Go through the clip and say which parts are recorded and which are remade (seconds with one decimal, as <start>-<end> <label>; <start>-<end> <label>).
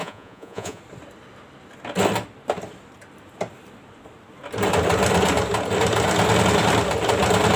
0.0-0.8 remade; 0.8-7.6 recorded